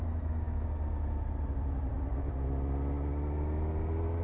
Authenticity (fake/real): real